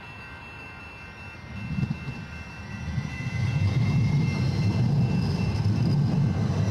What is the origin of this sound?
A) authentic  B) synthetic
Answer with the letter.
A